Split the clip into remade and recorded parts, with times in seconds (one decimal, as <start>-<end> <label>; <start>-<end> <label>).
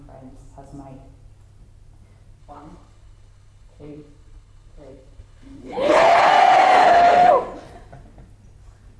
0.0-2.4 recorded; 2.4-6.3 remade; 6.3-6.8 recorded; 6.8-7.3 remade; 7.3-9.0 recorded